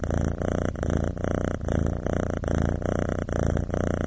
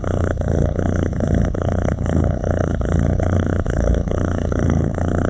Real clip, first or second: first